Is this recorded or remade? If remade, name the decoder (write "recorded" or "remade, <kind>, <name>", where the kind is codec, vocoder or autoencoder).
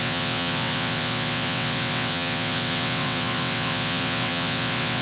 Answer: remade, vocoder, WaveNeXt